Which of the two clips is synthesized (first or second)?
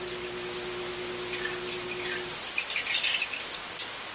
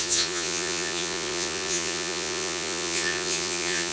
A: second